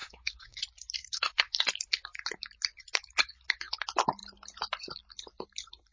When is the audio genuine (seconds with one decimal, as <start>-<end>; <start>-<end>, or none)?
0.6-1.0; 1.5-5.9